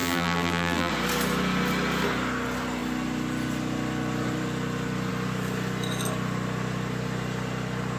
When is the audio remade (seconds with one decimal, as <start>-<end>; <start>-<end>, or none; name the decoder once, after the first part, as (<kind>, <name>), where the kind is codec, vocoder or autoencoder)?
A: 0.0-0.9 (vocoder, BigVGAN v2)